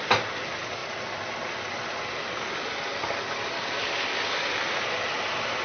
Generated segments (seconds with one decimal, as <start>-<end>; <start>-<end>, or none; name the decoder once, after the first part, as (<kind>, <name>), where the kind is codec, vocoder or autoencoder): none